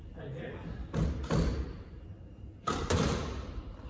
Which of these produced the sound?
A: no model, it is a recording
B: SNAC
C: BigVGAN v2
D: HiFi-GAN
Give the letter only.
A